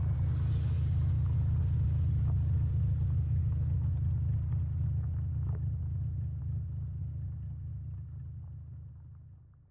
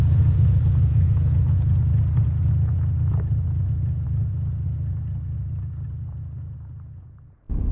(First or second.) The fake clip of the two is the second